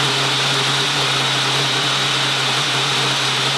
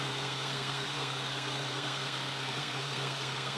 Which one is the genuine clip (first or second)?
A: first